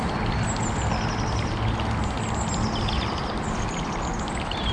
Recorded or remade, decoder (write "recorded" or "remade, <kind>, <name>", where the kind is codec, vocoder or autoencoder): recorded